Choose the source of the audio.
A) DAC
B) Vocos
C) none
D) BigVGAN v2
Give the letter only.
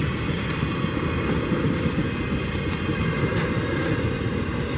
C